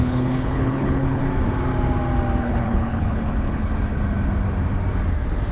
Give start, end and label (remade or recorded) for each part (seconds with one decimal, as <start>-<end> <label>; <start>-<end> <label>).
0.0-1.2 remade; 1.2-2.4 recorded; 2.4-3.7 remade; 3.7-5.5 recorded